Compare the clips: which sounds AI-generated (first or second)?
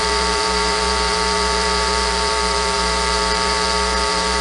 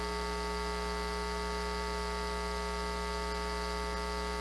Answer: first